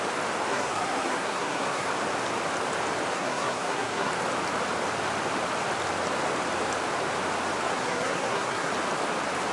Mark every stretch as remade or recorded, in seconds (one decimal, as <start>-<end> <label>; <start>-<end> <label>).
0.0-0.5 recorded; 0.5-1.9 remade; 1.9-3.1 recorded; 3.1-4.1 remade; 4.1-7.7 recorded; 7.7-8.7 remade; 8.7-9.5 recorded